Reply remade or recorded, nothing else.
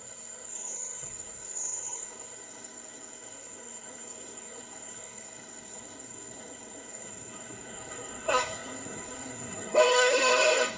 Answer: remade